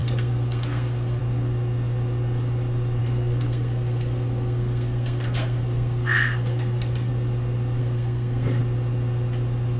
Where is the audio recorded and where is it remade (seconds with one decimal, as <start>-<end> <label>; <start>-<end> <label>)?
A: 0.0-1.2 remade; 1.2-3.0 recorded; 3.0-7.1 remade; 7.1-7.8 recorded; 7.8-8.6 remade; 8.6-9.8 recorded